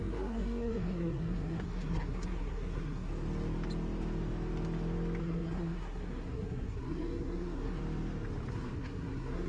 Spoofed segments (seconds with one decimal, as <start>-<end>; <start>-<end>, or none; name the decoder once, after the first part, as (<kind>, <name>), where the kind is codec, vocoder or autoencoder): 0.0-3.1 (codec, SNAC); 5.2-7.8; 8.5-9.5